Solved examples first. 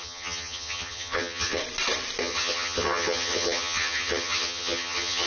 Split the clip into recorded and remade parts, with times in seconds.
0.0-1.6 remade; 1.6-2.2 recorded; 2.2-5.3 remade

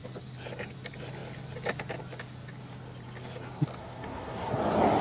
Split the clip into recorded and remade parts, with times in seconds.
0.0-3.8 recorded; 3.8-4.5 remade; 4.5-5.0 recorded